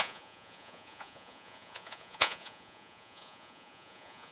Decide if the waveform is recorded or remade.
remade